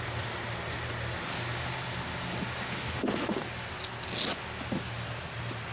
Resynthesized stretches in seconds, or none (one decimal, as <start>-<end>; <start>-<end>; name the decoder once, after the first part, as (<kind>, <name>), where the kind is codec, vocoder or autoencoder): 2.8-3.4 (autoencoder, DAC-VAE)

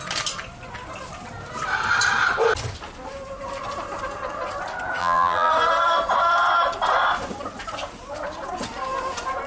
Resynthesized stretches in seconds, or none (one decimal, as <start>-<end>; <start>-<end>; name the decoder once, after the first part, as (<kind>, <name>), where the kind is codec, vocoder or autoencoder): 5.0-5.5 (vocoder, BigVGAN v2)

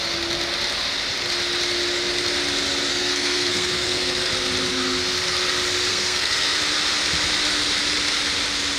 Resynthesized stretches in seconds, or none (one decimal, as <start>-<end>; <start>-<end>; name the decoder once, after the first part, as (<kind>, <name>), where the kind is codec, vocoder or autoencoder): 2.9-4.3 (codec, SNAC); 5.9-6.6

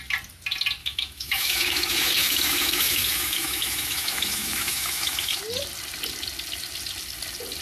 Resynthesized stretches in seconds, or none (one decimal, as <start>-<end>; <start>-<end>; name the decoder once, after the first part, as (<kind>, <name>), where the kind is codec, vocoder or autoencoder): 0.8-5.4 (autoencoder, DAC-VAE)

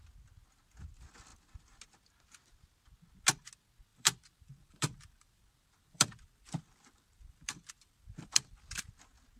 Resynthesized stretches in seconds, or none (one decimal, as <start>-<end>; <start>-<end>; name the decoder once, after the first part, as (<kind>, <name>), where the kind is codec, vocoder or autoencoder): 3.9-9.0 (vocoder, BigVGAN v2)

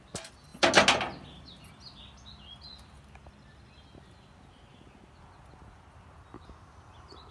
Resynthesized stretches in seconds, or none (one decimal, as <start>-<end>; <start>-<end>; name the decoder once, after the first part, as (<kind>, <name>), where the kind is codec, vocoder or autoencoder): none

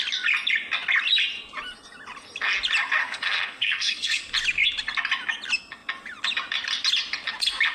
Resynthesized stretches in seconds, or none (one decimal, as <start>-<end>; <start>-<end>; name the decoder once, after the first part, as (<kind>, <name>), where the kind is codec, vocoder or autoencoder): 3.0-4.2 (codec, SNAC)